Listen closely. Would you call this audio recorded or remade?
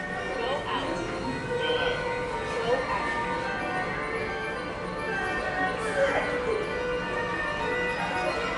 recorded